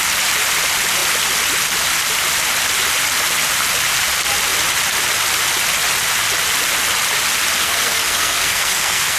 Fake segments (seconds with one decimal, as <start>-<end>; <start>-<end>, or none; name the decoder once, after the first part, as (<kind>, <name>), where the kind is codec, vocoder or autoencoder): 7.6-9.2 (codec, SNAC)